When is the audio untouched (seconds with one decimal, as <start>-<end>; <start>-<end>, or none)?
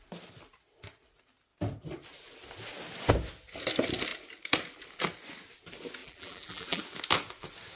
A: 0.0-6.0; 6.8-7.8